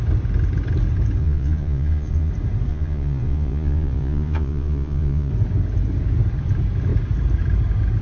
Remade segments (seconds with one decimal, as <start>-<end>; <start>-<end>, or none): 1.2-2.3; 2.7-5.3